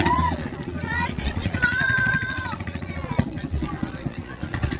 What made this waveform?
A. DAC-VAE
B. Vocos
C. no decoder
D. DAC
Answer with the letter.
B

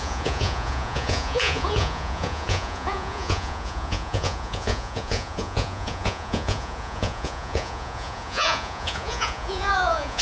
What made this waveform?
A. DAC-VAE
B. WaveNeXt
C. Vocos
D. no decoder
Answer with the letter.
C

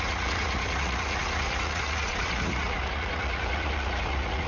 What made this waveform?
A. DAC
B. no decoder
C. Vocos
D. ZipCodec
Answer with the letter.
C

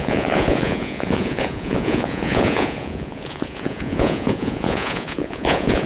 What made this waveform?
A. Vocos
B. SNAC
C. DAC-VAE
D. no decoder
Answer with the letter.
A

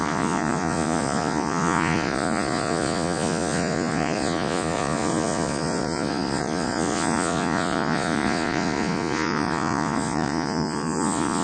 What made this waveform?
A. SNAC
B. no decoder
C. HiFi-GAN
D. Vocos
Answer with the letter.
D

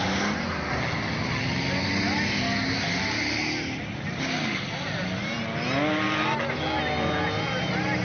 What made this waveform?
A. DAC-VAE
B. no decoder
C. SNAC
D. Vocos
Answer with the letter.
B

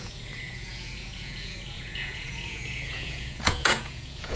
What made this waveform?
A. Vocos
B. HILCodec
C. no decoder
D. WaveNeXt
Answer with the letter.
A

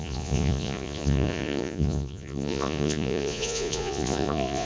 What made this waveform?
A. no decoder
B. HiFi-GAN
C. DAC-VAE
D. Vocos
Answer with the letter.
D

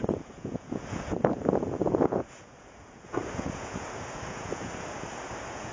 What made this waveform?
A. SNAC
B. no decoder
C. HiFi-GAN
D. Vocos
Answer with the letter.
D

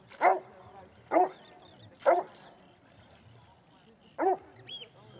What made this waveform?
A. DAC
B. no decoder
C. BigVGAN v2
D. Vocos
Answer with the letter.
B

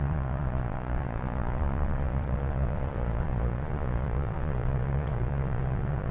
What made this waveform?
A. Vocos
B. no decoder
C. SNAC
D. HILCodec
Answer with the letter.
A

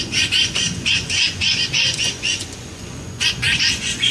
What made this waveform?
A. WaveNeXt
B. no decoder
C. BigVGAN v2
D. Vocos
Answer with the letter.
D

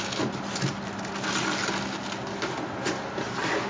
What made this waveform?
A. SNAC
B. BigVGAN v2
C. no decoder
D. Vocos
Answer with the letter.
C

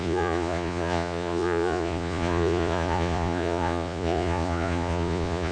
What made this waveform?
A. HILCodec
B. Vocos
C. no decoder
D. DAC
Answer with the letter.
B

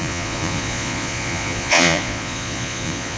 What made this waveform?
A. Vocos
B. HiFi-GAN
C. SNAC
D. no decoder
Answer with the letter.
A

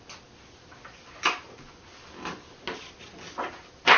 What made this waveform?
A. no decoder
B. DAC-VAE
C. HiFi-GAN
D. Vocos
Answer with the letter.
A